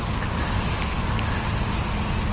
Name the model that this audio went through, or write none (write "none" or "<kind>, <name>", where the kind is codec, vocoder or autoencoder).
none